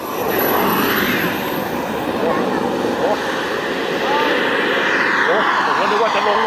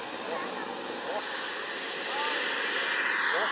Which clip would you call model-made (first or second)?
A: first